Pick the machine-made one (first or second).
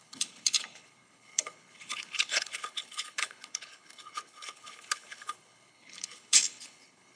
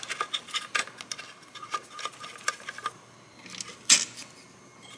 first